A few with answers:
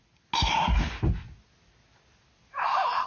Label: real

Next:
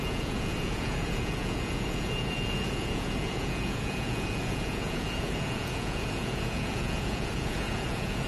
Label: fake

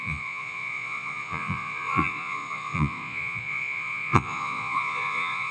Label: fake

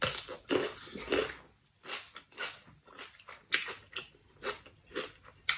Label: real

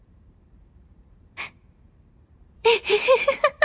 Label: fake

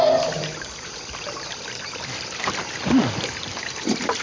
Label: real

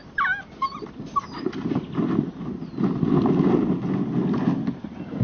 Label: real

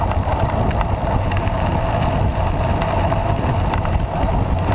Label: real